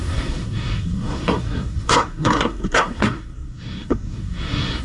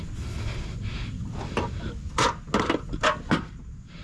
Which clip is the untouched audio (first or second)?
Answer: second